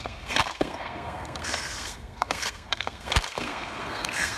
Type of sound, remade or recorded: remade